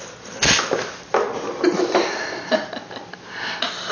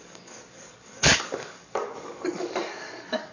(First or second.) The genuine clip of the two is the first